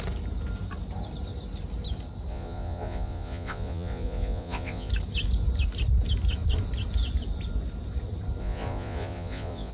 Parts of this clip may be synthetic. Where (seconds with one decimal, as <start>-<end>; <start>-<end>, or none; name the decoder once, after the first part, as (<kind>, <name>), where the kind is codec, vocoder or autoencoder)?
2.3-4.9 (vocoder, Vocos); 8.4-9.7

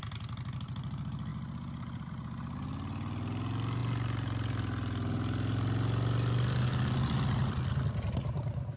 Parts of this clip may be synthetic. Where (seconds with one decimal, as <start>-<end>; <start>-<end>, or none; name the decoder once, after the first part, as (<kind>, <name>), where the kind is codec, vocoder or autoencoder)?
none

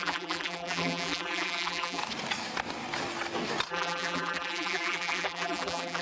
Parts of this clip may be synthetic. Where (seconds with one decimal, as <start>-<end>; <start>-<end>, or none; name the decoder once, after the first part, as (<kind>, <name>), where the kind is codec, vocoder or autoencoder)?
0.0-2.0 (vocoder, BigVGAN v2); 3.7-6.0